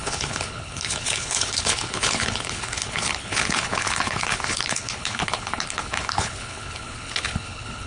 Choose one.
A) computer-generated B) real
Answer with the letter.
A